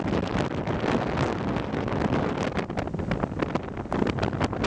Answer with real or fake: real